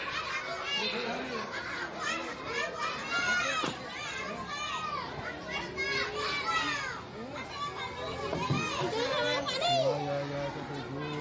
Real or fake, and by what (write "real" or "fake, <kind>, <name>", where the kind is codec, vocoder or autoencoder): real